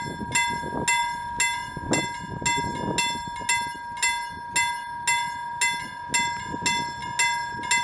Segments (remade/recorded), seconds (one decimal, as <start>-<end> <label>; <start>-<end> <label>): 0.0-7.8 recorded